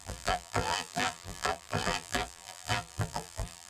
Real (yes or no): no